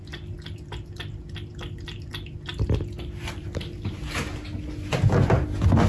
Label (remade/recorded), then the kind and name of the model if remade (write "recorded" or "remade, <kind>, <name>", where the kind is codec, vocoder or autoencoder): recorded